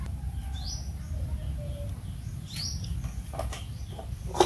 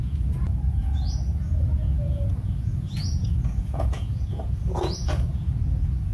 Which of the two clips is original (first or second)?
first